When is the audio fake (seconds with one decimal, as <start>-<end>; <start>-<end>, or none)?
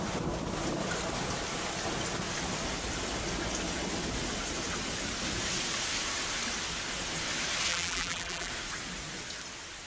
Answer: 7.7-8.5